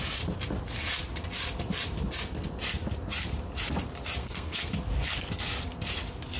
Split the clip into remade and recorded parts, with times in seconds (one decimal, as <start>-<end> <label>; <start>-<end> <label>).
0.0-4.2 recorded; 4.2-4.7 remade; 4.7-6.4 recorded